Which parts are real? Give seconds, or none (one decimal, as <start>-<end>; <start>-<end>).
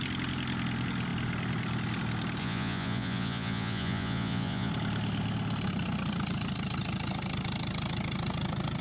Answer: 0.0-2.4; 4.7-8.8